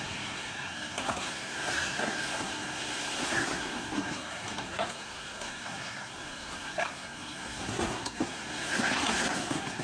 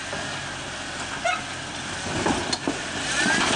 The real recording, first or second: second